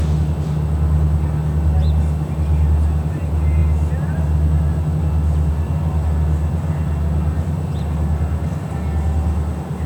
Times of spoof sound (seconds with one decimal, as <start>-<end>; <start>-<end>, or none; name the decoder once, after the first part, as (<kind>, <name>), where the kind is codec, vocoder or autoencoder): none